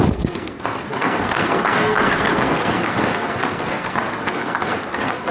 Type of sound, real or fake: fake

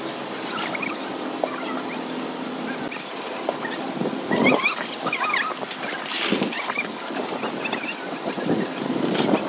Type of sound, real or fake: real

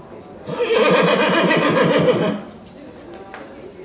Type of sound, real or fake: real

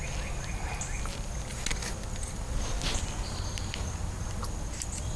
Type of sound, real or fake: real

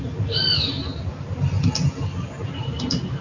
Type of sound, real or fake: real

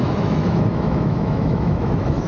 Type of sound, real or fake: fake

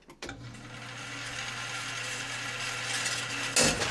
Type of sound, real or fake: real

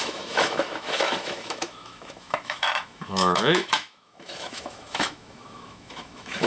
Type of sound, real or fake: fake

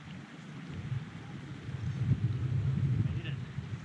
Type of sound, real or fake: real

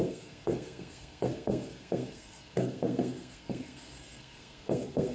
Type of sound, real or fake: fake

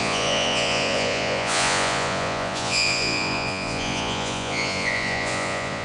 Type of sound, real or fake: fake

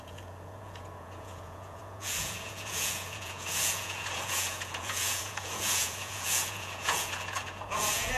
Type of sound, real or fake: fake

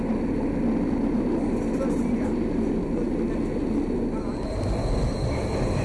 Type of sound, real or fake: real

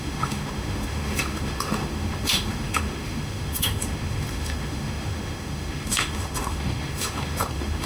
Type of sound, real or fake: fake